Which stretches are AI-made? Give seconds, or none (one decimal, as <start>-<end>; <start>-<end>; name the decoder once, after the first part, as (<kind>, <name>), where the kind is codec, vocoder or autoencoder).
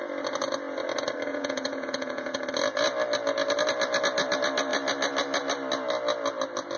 1.3-2.4 (vocoder, Vocos)